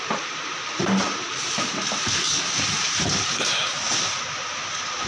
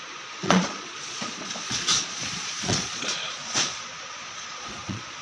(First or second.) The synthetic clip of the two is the second